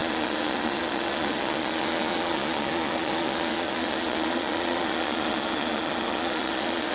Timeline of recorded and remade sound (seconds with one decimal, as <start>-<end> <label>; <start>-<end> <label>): 0.0-6.9 remade